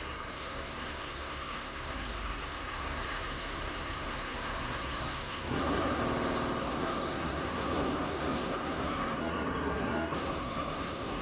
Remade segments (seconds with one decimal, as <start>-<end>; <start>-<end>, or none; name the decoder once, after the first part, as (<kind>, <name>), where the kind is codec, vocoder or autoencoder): 0.0-6.0 (codec, SNAC); 6.6-11.2